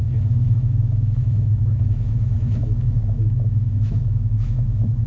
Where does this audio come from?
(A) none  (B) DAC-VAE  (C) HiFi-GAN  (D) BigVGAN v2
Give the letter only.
B